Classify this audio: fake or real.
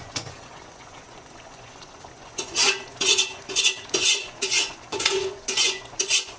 fake